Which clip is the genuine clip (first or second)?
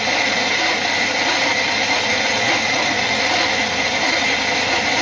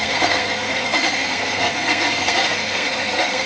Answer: first